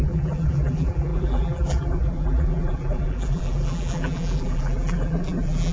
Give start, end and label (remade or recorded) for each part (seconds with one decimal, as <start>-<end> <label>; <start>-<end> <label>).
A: 0.0-5.7 remade

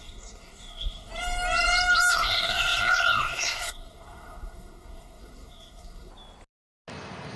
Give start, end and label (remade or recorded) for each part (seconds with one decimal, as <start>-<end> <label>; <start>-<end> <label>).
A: 0.0-1.1 remade; 1.1-2.1 recorded; 2.1-6.1 remade; 6.1-7.4 recorded

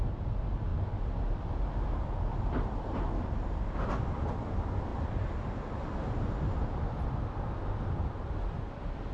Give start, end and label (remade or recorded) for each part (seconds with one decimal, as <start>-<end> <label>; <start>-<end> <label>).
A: 0.0-9.1 recorded

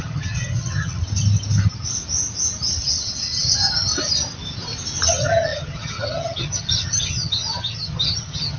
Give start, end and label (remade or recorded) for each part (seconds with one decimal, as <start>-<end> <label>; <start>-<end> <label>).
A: 0.0-1.0 remade; 1.0-3.4 recorded; 3.4-3.9 remade; 3.9-5.1 recorded; 5.1-8.6 remade

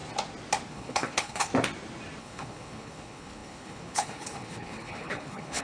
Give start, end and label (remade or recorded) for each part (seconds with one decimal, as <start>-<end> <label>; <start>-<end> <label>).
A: 0.0-0.7 recorded; 0.7-1.5 remade; 1.5-2.2 recorded; 2.2-5.6 remade

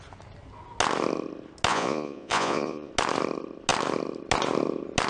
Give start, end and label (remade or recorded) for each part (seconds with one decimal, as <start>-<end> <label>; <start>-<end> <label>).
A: 0.0-1.7 recorded; 1.7-2.9 remade; 2.9-5.1 recorded

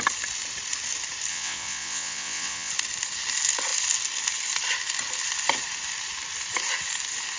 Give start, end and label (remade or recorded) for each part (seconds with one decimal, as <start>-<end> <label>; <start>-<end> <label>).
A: 0.0-1.3 recorded; 1.3-2.7 remade; 2.7-7.4 recorded

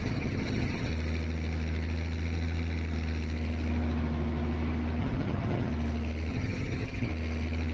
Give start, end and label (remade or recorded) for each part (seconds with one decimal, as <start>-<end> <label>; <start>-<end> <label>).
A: 0.0-0.9 remade; 0.9-5.0 recorded; 5.0-5.7 remade; 5.7-6.3 recorded; 6.3-7.1 remade; 7.1-7.7 recorded